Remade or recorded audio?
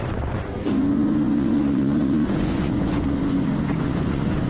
remade